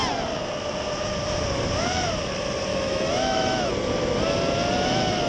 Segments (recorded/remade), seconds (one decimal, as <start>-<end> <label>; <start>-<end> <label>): 0.0-2.7 recorded; 2.7-3.7 remade; 3.7-5.3 recorded